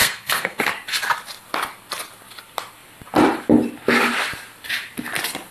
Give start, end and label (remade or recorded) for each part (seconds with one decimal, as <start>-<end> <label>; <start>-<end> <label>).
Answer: 0.0-0.6 remade; 0.6-5.5 recorded